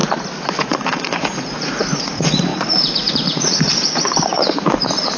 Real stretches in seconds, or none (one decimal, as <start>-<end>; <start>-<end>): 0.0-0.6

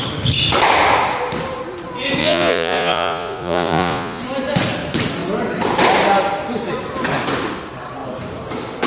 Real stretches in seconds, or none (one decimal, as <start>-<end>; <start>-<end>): 0.0-2.2; 4.2-8.9

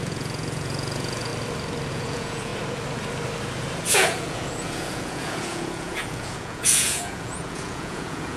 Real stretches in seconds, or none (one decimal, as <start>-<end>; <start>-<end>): 1.3-1.9; 2.5-3.9

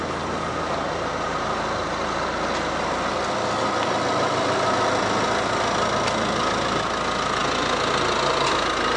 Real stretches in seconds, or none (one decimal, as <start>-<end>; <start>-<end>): 0.0-9.0

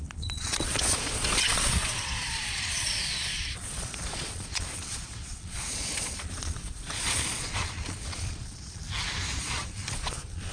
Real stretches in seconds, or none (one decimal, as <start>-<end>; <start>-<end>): 8.8-9.4